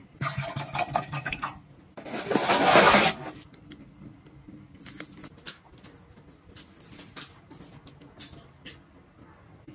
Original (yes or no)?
yes